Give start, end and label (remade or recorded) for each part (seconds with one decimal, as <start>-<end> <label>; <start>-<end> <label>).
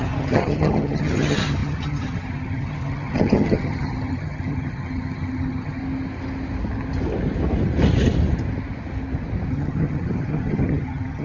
0.0-5.8 remade; 5.8-9.5 recorded; 9.5-11.2 remade